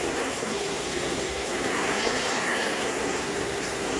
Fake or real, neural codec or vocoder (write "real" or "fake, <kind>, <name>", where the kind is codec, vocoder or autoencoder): fake, codec, SNAC